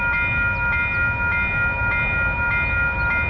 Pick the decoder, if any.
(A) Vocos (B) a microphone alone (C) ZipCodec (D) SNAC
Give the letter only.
B